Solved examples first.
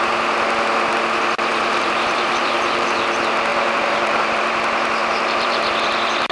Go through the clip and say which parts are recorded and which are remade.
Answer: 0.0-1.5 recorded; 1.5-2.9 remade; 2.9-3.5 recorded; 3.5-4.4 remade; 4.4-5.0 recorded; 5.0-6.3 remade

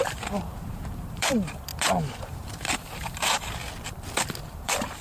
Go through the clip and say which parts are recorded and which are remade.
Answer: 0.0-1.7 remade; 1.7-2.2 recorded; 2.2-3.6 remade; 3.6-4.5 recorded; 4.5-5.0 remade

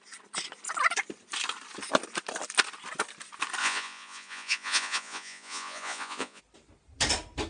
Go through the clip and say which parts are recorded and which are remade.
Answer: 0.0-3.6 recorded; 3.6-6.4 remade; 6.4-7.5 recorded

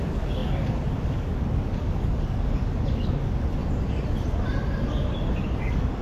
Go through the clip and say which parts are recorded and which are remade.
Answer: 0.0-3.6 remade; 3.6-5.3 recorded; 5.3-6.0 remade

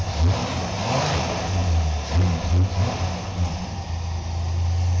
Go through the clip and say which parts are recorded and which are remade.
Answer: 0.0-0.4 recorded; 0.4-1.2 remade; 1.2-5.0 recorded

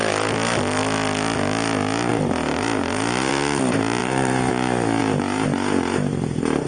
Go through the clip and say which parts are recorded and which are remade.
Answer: 0.0-4.0 recorded; 4.0-4.5 remade; 4.5-6.7 recorded